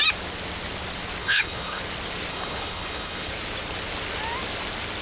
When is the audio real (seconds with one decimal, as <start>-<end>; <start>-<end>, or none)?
0.0-1.2; 1.8-2.3; 3.3-5.0